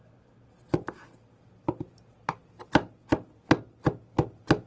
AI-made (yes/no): no